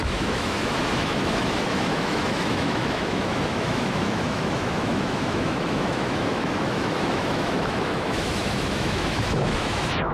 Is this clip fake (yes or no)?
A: yes